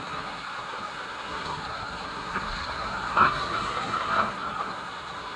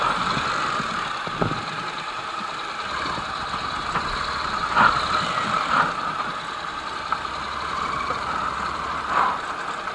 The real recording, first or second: second